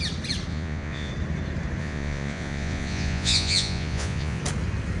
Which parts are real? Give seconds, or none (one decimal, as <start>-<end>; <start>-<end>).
0.0-0.5; 1.1-1.8; 4.4-5.0